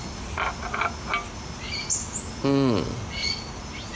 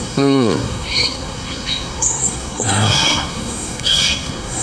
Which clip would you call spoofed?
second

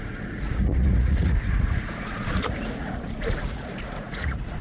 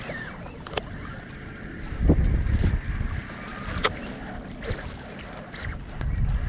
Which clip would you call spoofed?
first